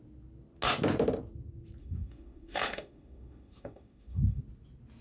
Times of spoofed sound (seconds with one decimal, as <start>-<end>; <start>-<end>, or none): 1.8-4.4